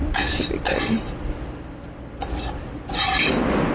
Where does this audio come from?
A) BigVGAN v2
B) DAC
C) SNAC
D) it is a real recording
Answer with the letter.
D